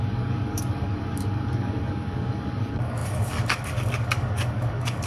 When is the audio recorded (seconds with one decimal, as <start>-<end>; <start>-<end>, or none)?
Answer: none